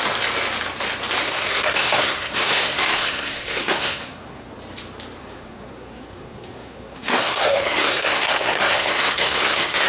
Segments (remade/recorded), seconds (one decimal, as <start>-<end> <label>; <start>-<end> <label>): 0.0-1.2 recorded; 1.2-4.5 remade; 4.5-5.2 recorded; 5.2-9.9 remade